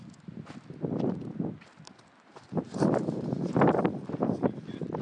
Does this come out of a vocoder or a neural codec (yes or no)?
no